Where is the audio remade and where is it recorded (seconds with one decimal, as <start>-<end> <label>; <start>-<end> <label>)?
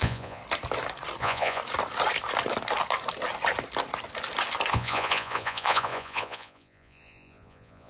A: 0.0-0.4 remade; 0.4-1.2 recorded; 1.2-1.6 remade; 1.6-4.7 recorded; 4.7-7.9 remade